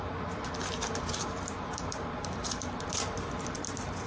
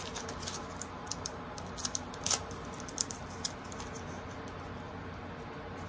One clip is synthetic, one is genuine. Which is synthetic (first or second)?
first